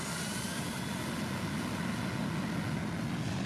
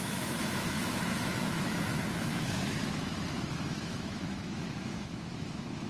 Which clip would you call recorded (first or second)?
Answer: first